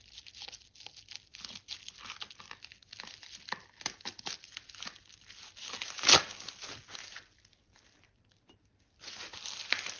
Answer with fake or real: real